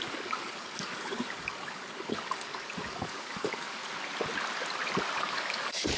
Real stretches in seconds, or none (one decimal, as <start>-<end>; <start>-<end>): 3.8-5.2